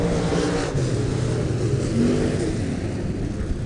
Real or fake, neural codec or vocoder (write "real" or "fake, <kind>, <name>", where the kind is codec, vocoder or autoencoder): real